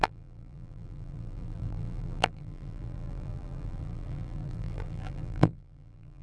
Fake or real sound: fake